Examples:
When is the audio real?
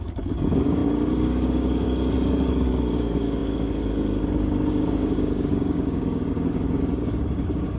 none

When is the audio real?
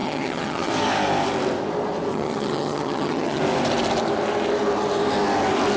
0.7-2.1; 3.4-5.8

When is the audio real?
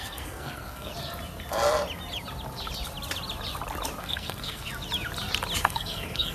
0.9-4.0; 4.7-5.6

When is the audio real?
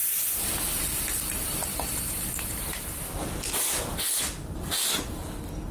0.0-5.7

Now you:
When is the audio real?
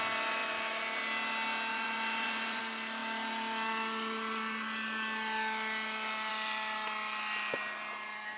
0.0-1.7; 2.6-8.4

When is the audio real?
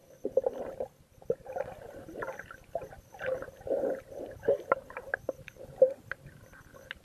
0.0-7.0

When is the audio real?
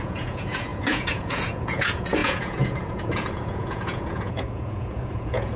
none